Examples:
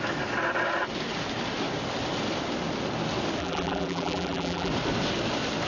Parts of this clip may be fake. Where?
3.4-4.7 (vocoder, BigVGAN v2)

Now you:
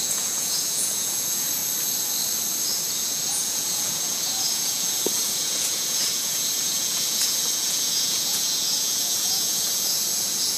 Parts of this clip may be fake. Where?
0.0-1.6 (vocoder, Vocos); 2.9-10.6